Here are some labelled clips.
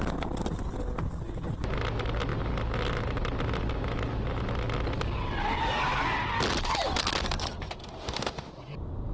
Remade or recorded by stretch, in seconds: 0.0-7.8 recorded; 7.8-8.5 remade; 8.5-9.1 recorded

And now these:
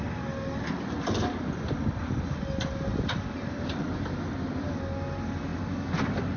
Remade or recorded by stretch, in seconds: 0.0-2.9 recorded; 2.9-4.3 remade; 4.3-6.4 recorded